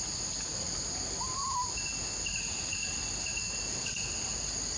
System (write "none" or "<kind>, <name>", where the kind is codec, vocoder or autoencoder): none